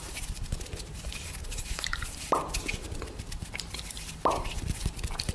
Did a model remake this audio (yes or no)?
yes